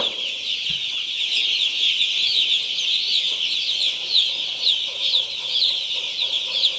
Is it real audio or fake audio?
fake